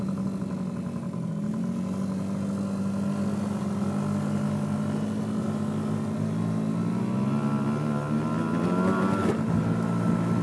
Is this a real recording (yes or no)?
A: yes